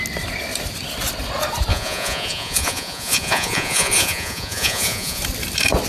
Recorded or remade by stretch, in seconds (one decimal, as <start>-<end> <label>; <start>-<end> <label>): 0.0-1.7 recorded; 1.7-5.2 remade; 5.2-5.9 recorded